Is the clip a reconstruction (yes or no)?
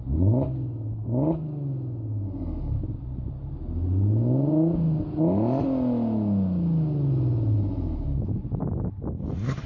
no